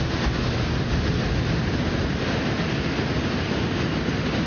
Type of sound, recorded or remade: recorded